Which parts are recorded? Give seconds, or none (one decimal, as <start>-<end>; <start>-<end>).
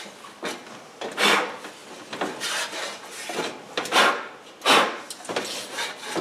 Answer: 0.0-6.2